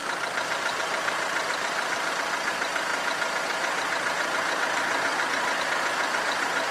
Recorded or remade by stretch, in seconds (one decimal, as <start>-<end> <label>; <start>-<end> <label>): 0.0-2.1 remade; 2.1-6.7 recorded